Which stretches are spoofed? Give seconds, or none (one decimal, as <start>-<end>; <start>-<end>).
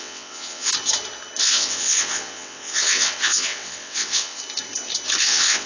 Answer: 0.0-0.7; 1.4-4.4; 5.2-5.7